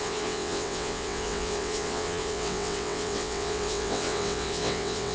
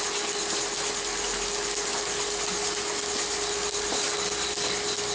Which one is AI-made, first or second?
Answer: first